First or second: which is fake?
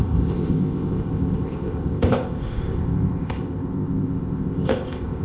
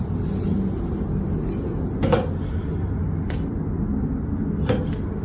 first